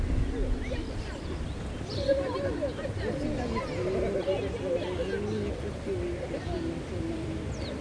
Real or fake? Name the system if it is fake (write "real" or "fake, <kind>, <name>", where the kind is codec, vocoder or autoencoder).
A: real